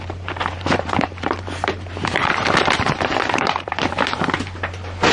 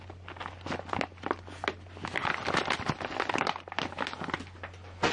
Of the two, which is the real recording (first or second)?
second